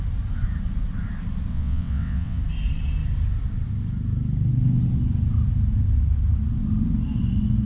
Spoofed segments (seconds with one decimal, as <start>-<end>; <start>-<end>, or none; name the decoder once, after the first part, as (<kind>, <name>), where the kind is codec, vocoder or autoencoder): 1.5-2.4 (vocoder, WaveNeXt)

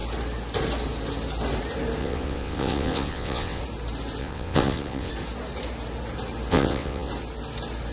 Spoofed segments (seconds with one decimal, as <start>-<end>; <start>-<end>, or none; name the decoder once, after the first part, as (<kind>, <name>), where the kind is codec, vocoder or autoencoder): 2.0-3.6 (vocoder, WaveNeXt); 4.2-5.1; 6.5-7.1

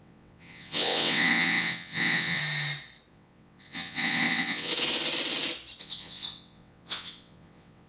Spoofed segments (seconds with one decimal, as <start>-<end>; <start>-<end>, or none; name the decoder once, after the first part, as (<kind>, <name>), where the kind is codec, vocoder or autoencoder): 0.0-2.4 (vocoder, WaveNeXt); 3.1-4.7; 5.8-7.9

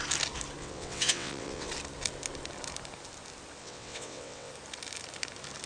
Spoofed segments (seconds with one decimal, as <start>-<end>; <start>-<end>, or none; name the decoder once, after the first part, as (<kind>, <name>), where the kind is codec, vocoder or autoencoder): 0.6-1.7 (vocoder, WaveNeXt); 3.6-4.5

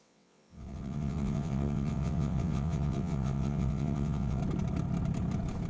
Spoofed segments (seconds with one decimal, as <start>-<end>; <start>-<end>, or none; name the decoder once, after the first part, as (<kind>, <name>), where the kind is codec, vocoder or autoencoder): 0.0-4.4 (vocoder, WaveNeXt)

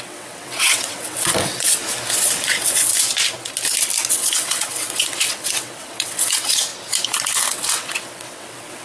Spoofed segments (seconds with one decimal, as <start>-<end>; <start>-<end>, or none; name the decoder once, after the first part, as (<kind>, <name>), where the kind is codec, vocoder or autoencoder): 0.0-1.8 (vocoder, WaveNeXt); 2.4-2.9; 4.1-6.7; 7.5-8.8